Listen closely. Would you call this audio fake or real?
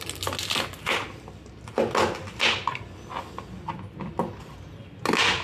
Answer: real